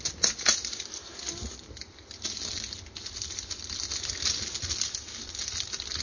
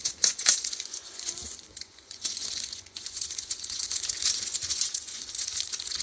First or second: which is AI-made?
second